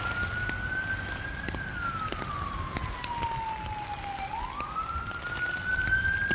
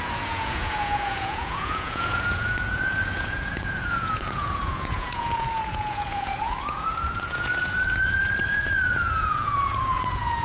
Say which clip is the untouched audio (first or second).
first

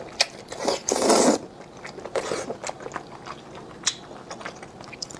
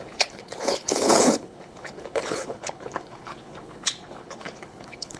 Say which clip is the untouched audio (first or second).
first